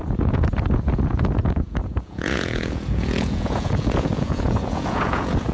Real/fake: fake